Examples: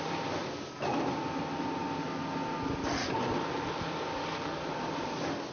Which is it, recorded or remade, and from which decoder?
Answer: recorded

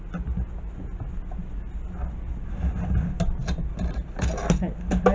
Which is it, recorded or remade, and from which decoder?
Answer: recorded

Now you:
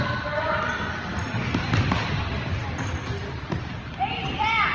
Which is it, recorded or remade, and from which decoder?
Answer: recorded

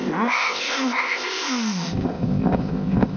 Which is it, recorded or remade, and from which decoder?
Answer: remade, codec, ZipCodec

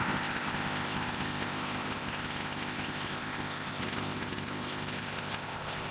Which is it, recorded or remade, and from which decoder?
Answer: remade, codec, ZipCodec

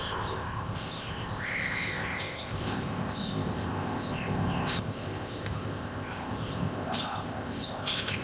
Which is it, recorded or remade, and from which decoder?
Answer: remade, codec, ZipCodec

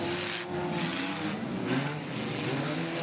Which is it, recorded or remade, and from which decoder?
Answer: recorded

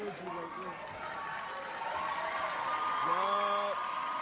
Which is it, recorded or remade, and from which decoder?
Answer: recorded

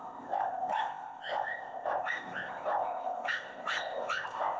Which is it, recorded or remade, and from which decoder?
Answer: remade, codec, ZipCodec